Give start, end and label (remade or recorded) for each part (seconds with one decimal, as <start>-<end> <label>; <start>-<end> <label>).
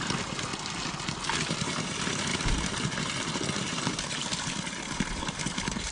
0.0-0.5 remade; 0.5-1.4 recorded; 1.4-5.9 remade